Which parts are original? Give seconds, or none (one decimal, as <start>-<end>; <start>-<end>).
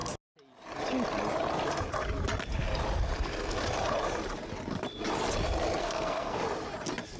0.0-5.8; 6.4-7.2